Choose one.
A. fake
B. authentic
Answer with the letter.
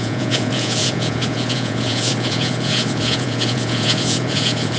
A